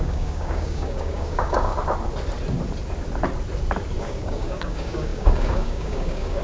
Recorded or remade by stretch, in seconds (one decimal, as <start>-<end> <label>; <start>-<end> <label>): 0.0-1.7 remade; 1.7-4.0 recorded; 4.0-6.4 remade